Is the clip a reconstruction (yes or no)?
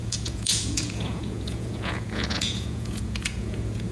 yes